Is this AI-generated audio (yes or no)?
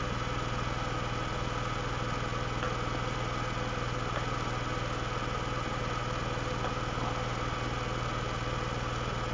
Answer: no